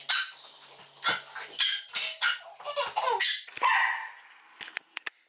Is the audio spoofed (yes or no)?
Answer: no